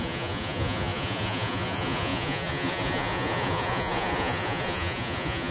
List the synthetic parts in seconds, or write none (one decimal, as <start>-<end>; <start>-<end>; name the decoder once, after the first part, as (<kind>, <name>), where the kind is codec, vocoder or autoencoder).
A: 0.0-5.5 (vocoder, Vocos)